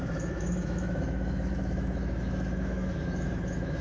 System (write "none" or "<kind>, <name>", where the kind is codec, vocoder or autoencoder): autoencoder, DAC-VAE